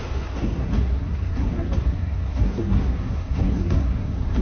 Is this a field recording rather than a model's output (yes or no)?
no